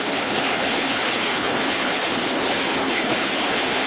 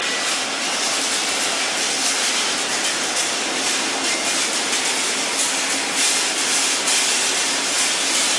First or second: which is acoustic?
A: second